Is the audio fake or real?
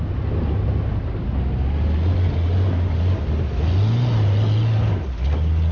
real